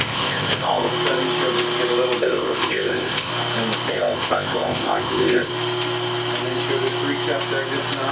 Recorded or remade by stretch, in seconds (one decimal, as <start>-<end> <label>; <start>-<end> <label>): 0.0-0.9 remade; 0.9-2.2 recorded; 2.2-3.3 remade; 3.3-3.9 recorded; 3.9-5.5 remade; 5.5-8.1 recorded